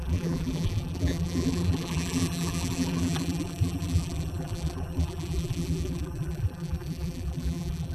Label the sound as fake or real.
fake